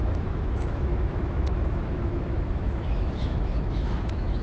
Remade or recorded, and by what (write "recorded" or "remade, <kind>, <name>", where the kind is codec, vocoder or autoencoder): remade, autoencoder, DAC-VAE